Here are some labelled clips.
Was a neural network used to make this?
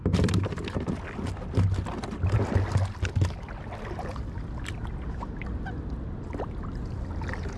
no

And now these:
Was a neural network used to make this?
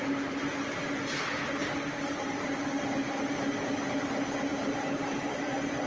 no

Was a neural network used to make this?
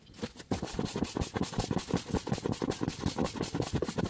no